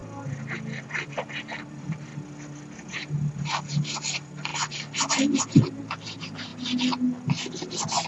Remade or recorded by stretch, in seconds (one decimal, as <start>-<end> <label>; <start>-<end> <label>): 0.0-1.7 recorded; 1.7-2.1 remade; 2.1-2.8 recorded; 2.8-4.5 remade; 4.5-5.7 recorded; 5.7-6.5 remade; 6.5-8.1 recorded